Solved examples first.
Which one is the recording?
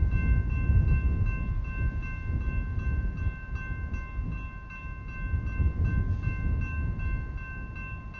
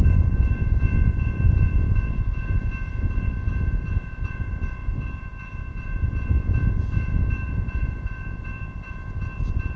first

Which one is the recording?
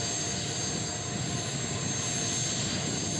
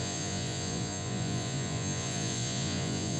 first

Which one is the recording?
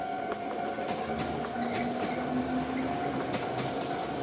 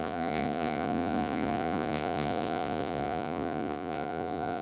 first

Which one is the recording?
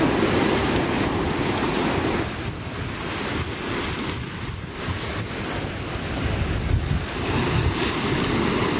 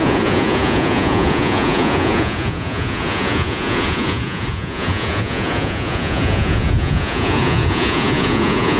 first